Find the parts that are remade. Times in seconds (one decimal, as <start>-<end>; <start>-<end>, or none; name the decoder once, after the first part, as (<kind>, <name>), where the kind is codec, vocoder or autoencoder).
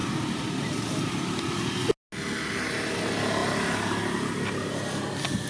none